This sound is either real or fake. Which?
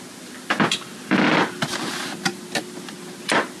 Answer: real